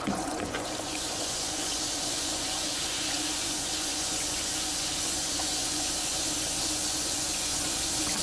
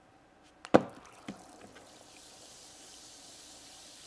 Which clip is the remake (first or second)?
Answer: first